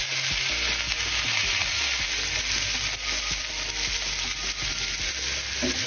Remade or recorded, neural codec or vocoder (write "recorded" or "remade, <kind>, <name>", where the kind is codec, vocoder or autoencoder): recorded